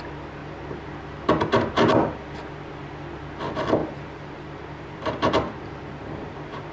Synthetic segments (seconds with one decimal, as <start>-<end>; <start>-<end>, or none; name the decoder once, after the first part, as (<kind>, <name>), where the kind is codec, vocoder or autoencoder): 0.4-0.9 (vocoder, BigVGAN v2); 3.8-6.7